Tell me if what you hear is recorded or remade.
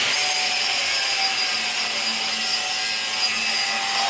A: recorded